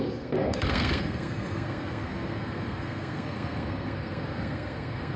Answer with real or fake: fake